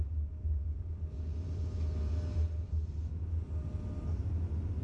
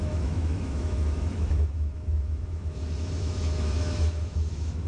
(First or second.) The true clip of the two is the first